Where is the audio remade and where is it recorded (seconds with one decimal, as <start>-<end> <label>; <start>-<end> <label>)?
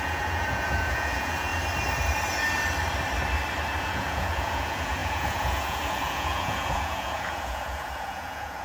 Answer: 0.0-1.5 remade; 1.5-3.8 recorded; 3.8-8.6 remade